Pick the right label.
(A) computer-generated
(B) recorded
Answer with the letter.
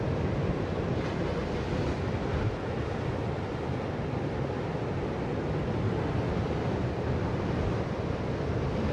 B